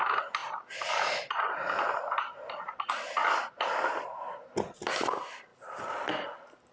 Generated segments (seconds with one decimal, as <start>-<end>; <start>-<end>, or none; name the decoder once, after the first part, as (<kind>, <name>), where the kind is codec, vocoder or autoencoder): 0.4-2.8 (vocoder, BigVGAN v2); 5.5-6.1